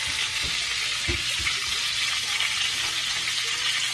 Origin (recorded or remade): recorded